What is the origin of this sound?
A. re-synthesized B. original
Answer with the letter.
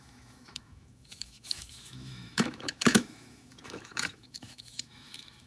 A